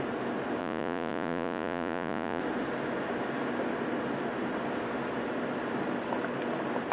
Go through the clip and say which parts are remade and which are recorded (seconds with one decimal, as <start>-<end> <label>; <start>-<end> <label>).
0.0-0.6 recorded; 0.6-2.4 remade; 2.4-6.9 recorded